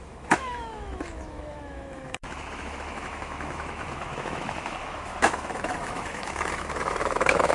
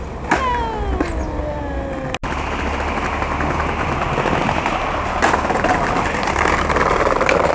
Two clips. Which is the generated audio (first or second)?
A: first